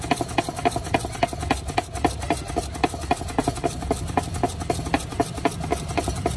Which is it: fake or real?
real